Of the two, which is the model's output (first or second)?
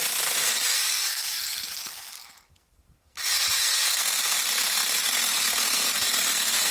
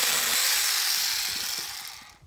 first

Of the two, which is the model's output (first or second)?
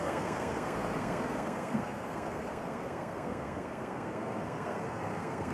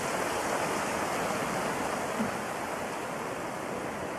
first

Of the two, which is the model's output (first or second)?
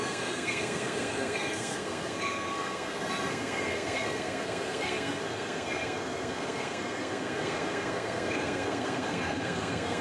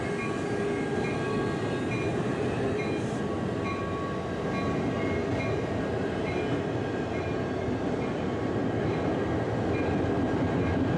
first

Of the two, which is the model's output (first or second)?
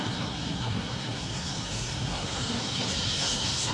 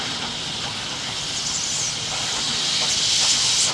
first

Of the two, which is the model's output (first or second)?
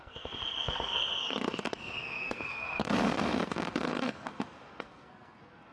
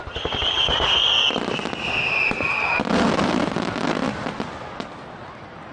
first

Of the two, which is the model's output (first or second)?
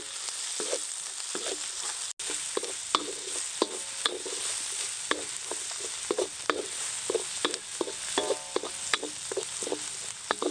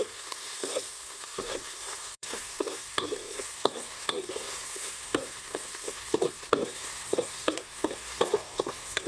second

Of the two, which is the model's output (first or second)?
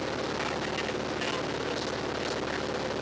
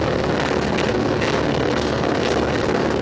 second